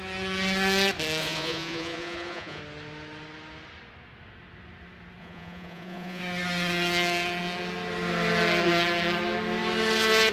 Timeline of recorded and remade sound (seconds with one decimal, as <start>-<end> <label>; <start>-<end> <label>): 0.0-1.2 recorded; 1.2-2.6 remade; 2.6-5.2 recorded; 5.2-6.2 remade; 6.2-10.3 recorded